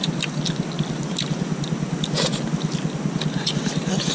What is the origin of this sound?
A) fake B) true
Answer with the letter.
B